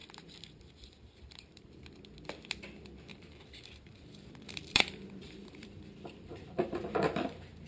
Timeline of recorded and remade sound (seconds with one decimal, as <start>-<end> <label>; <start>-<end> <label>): 0.0-1.8 remade; 1.8-3.1 recorded; 3.1-7.7 remade